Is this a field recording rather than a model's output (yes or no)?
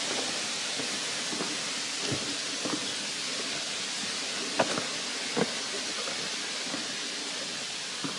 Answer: yes